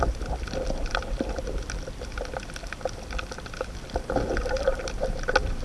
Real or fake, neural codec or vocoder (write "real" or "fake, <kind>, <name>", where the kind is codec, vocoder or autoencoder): real